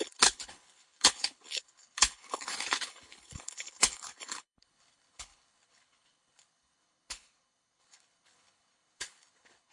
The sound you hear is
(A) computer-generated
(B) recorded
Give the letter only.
A